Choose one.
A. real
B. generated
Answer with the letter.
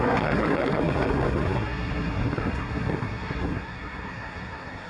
B